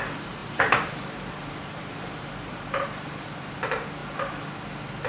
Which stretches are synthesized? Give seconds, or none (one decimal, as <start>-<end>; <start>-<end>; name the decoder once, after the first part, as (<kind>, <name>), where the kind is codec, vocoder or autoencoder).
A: 0.0-4.0 (vocoder, BigVGAN v2)